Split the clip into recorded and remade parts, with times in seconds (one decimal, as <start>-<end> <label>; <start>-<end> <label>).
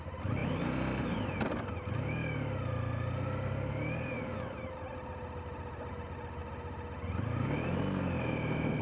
0.0-8.8 recorded